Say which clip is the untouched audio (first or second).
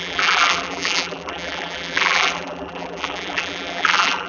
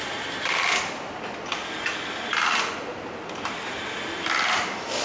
second